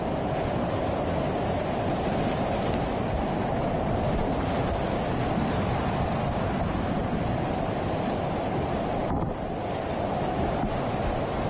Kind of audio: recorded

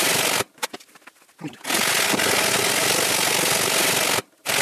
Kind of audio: recorded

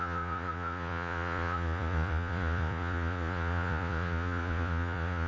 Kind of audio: remade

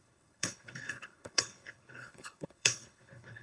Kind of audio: remade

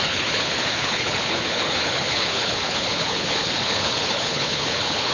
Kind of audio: remade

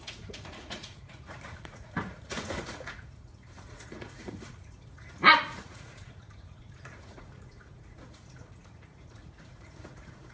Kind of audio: remade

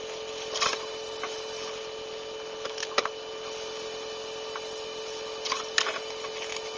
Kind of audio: recorded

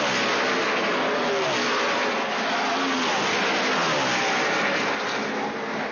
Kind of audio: recorded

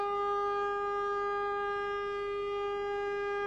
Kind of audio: recorded